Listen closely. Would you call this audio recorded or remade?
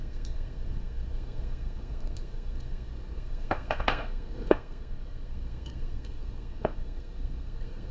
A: remade